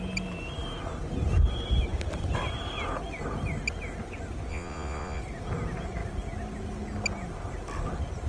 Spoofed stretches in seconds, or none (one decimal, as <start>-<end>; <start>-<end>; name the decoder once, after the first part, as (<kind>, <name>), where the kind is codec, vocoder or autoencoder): 4.5-5.2 (vocoder, Vocos)